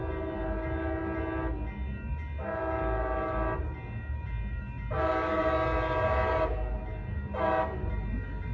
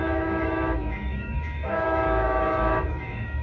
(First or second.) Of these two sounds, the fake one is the second